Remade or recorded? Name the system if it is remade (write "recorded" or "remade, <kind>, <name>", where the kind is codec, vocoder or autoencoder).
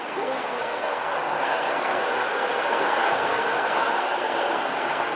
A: remade, codec, SNAC